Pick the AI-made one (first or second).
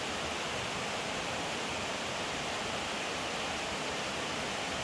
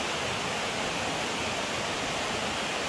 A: first